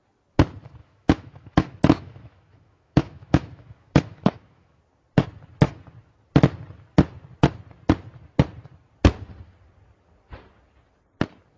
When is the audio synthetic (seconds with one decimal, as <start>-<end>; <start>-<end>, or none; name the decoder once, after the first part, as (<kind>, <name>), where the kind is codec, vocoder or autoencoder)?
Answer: 0.8-4.8 (autoencoder, DAC-VAE)